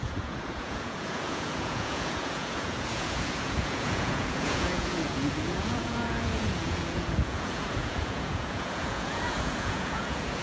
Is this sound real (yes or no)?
no